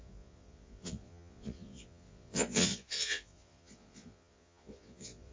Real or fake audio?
fake